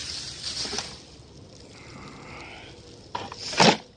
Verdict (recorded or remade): recorded